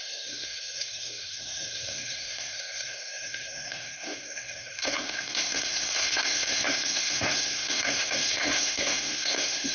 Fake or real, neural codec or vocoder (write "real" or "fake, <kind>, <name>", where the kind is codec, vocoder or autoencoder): fake, codec, SNAC